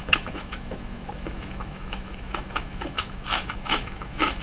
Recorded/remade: remade